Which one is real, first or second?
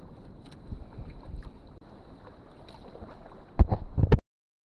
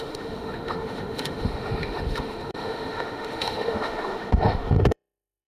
first